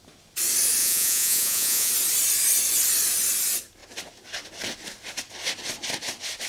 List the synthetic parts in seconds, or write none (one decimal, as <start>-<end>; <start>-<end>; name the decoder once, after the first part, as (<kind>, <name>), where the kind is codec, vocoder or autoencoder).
0.8-1.9 (vocoder, Vocos)